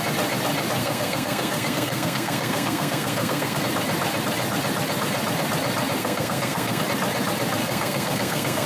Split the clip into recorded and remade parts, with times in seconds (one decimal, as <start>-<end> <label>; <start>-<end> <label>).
0.0-0.8 recorded; 0.8-3.6 remade; 3.6-6.0 recorded; 6.0-6.8 remade; 6.8-7.6 recorded; 7.6-8.7 remade